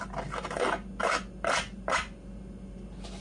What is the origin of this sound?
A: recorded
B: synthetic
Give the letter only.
A